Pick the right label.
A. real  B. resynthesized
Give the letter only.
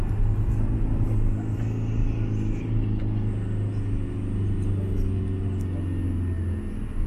A